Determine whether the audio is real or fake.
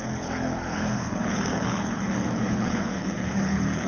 fake